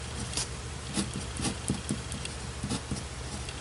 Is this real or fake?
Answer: fake